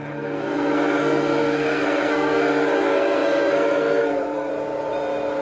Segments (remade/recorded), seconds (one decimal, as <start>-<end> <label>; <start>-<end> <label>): 0.0-4.5 remade; 4.5-5.4 recorded